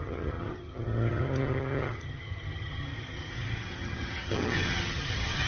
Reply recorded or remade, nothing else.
remade